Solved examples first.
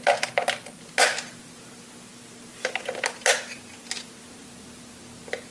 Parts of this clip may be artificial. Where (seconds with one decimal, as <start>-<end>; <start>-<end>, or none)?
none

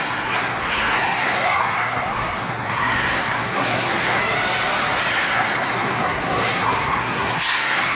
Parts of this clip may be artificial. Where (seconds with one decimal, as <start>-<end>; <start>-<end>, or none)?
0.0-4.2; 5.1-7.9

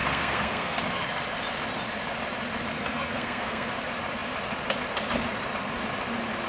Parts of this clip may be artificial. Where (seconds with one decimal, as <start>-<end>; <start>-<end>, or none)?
0.0-0.8; 2.7-3.7

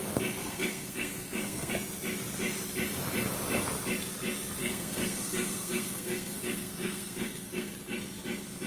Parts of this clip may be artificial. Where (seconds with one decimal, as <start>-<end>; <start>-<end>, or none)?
0.4-1.7; 4.6-7.7